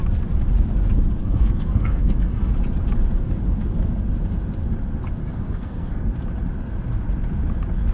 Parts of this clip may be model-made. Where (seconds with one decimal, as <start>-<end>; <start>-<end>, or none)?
1.2-2.5; 5.2-6.1